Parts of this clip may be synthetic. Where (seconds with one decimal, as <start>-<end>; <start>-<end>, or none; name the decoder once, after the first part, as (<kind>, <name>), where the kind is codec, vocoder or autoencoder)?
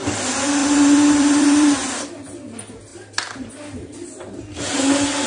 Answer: 0.6-2.0 (vocoder, BigVGAN v2); 2.9-3.5